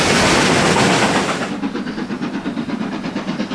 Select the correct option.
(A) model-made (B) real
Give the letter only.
B